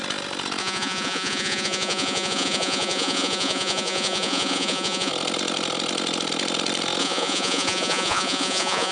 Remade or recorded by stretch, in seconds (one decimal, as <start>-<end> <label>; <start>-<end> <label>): 0.0-0.6 recorded; 0.6-5.1 remade; 5.1-7.0 recorded; 7.0-8.9 remade